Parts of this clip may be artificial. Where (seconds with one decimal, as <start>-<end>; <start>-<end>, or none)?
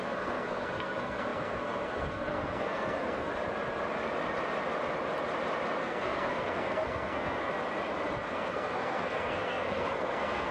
0.0-3.3; 5.8-7.5; 8.3-10.5